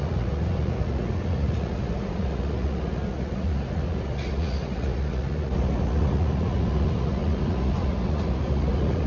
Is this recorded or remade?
remade